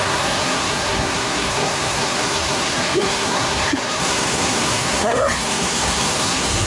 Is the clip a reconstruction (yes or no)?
yes